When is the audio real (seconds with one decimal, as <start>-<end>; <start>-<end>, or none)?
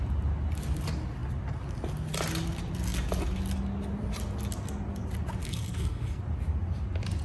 0.0-5.4; 6.2-7.2